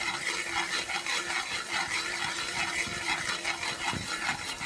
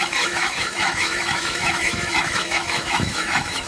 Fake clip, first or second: second